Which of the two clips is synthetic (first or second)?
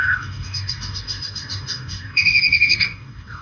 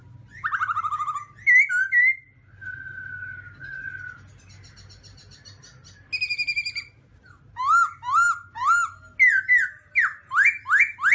first